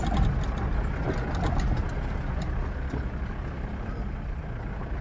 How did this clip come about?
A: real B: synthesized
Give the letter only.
A